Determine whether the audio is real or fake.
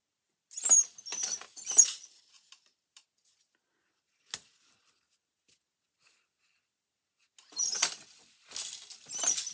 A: real